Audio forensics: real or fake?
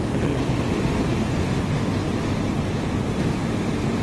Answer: real